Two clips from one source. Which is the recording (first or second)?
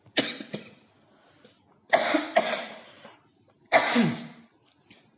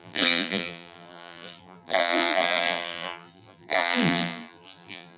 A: first